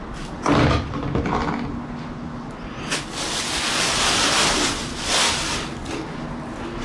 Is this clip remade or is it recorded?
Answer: recorded